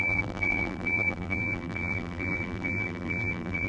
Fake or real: fake